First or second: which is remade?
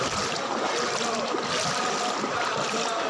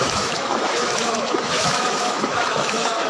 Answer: second